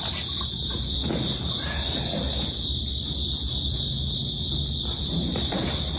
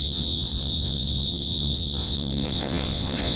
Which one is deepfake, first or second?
second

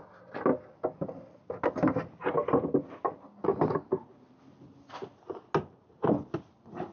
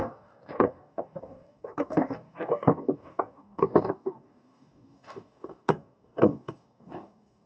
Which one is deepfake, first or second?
second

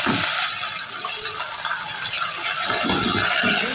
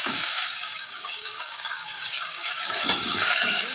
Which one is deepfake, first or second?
second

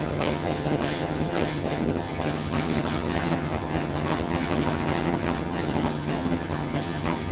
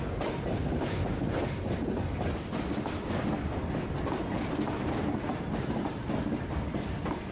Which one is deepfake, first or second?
first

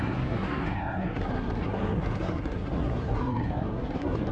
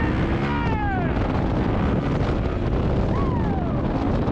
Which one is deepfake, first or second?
first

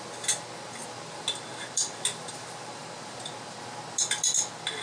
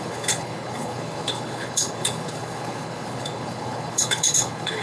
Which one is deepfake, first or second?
second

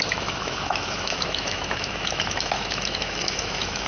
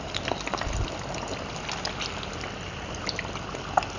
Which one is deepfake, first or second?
first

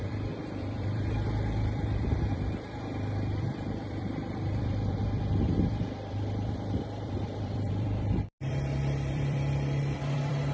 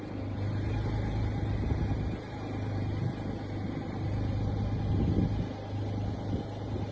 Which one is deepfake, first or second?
first